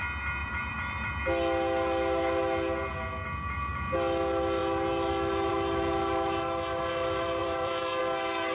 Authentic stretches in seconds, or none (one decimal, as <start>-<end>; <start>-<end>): 0.0-0.4; 1.1-7.4; 8.0-8.5